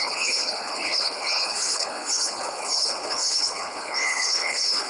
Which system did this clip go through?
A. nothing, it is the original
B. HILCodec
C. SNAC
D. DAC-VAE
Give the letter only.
B